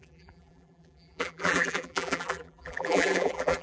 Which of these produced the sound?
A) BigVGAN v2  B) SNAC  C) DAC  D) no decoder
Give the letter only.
A